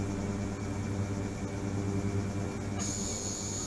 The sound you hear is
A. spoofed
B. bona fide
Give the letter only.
B